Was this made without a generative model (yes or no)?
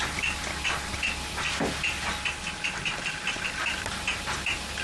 yes